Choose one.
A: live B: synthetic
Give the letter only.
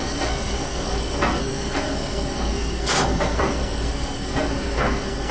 B